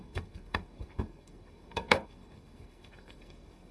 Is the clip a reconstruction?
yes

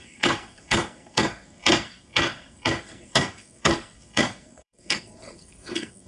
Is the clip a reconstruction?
yes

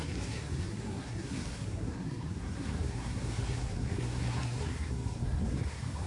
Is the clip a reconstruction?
yes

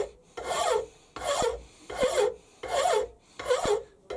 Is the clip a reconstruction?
no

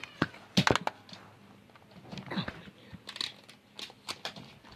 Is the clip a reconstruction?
no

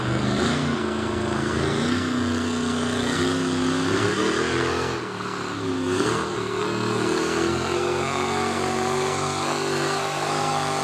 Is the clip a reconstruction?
yes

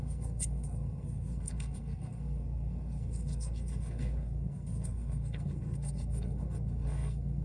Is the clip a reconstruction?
yes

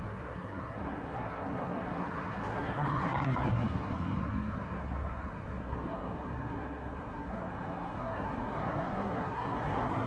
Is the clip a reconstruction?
yes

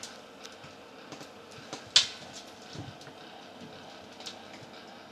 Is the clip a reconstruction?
no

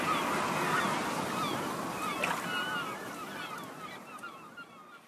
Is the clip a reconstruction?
no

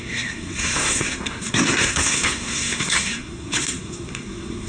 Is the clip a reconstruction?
yes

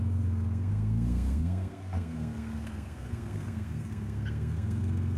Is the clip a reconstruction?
yes